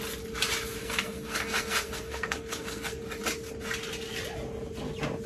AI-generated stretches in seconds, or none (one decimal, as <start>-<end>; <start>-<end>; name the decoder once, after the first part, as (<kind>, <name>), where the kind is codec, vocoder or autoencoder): 0.8-3.0 (codec, SNAC)